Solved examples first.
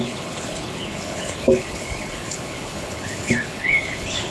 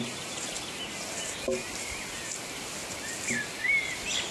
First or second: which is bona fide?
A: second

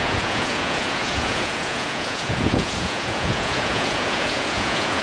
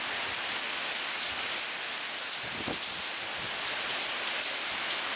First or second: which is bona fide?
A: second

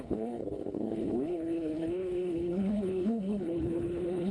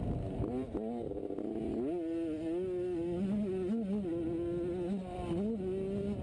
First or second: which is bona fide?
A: second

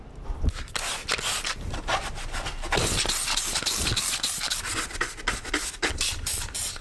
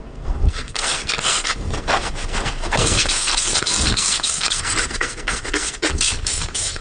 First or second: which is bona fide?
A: first